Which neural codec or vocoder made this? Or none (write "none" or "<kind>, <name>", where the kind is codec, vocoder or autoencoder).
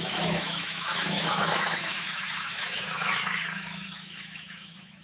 autoencoder, DAC-VAE